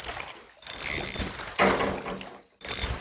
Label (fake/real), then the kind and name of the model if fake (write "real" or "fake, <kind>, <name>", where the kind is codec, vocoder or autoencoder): fake, vocoder, BigVGAN v2